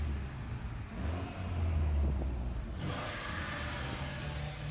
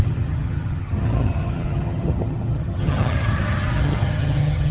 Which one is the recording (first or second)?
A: first